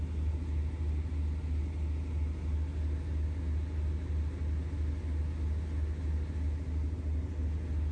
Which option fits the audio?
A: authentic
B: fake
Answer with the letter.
A